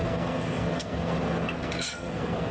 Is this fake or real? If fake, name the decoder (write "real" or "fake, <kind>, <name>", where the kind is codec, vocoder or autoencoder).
fake, codec, SNAC